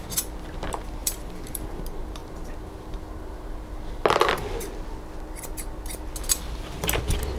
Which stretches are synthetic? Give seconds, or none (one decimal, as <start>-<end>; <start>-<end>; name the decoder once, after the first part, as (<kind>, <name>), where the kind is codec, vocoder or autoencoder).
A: 1.0-1.7 (vocoder, BigVGAN v2)